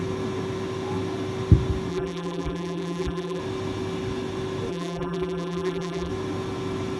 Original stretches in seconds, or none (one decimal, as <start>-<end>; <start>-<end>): 0.0-1.9; 3.4-4.7; 6.1-7.0